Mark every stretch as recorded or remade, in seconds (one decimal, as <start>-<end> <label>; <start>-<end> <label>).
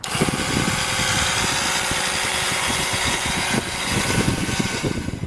0.0-2.3 recorded; 2.3-5.3 remade